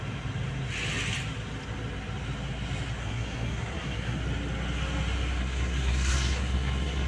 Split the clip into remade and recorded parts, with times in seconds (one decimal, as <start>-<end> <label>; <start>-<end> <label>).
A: 0.0-3.0 recorded; 3.0-4.2 remade; 4.2-5.4 recorded; 5.4-7.1 remade